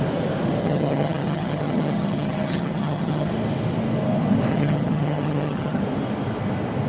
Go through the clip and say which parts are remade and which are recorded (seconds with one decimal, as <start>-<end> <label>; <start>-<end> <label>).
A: 0.0-0.6 recorded; 0.6-3.3 remade; 3.3-4.5 recorded; 4.5-5.8 remade; 5.8-6.9 recorded